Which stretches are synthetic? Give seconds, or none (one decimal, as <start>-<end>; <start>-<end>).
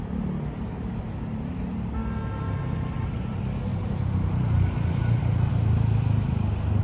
3.7-5.5